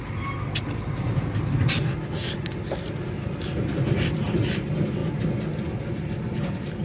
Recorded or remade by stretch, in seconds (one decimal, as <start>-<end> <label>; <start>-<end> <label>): 0.0-6.8 recorded